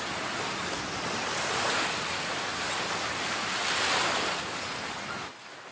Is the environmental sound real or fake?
real